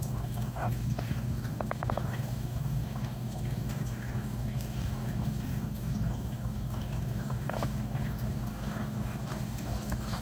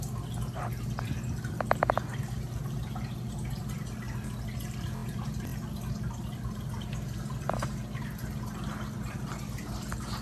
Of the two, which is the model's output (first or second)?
first